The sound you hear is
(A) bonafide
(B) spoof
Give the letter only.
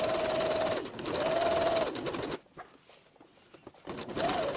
A